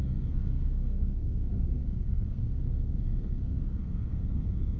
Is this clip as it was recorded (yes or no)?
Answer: no